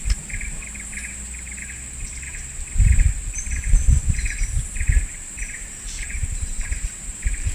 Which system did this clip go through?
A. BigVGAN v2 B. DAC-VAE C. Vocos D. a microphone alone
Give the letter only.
A